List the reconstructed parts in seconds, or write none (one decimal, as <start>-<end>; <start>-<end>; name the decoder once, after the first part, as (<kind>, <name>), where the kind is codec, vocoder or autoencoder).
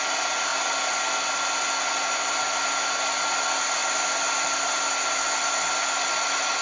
none